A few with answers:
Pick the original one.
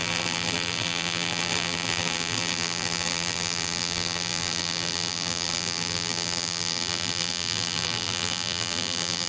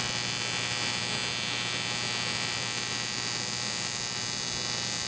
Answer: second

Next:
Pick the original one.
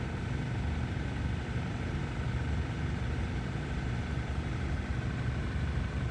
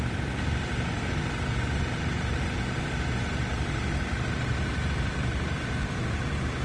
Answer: second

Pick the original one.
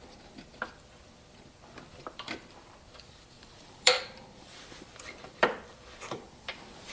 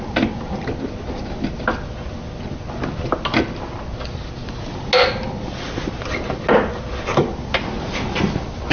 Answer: second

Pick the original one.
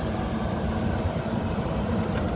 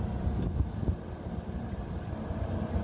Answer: first